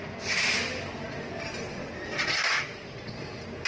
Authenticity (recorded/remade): recorded